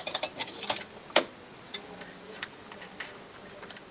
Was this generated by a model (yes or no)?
yes